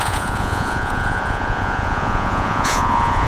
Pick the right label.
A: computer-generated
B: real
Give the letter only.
A